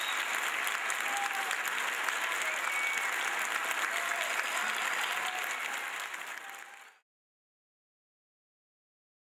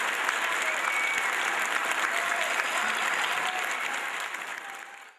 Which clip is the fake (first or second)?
second